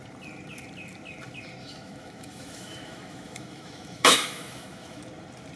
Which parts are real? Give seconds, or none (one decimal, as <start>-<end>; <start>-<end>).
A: 0.0-1.6; 5.0-5.6